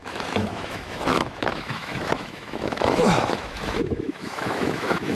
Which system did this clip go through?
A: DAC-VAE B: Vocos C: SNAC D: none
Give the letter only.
A